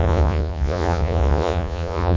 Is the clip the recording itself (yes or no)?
no